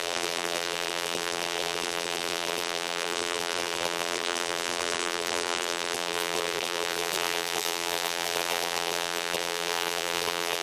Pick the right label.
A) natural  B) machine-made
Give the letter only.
B